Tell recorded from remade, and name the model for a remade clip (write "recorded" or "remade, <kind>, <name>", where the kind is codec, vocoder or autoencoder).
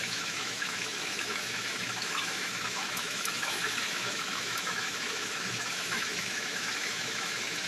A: remade, autoencoder, DAC-VAE